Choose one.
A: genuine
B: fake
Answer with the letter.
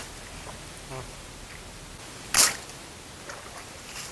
A